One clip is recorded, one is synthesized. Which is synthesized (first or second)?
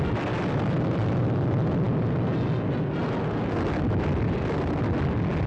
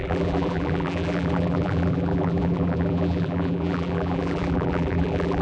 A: second